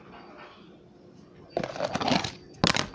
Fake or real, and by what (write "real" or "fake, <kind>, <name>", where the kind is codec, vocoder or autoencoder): real